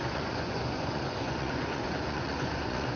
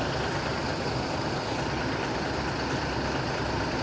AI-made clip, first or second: first